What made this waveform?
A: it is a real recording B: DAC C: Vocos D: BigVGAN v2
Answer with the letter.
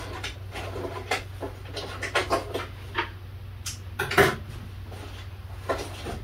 A